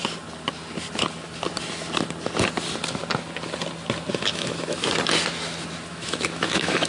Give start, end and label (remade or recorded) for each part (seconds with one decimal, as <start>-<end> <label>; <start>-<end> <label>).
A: 0.0-4.1 recorded; 4.1-4.8 remade; 4.8-5.9 recorded; 5.9-6.9 remade